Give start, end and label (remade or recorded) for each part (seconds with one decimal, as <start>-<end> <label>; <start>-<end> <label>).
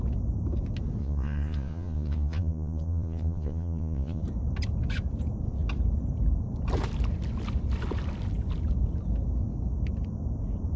0.0-1.0 recorded; 1.0-4.2 remade; 4.2-10.8 recorded